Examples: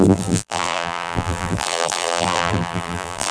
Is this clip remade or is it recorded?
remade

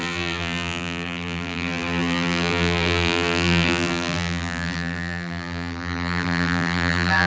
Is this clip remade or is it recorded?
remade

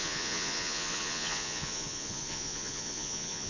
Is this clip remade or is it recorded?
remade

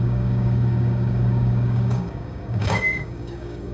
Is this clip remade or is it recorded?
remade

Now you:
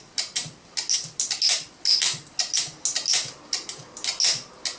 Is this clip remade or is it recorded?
recorded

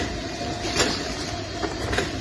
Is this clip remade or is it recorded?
recorded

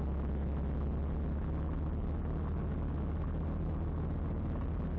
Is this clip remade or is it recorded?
recorded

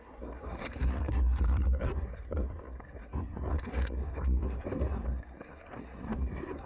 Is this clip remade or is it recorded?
remade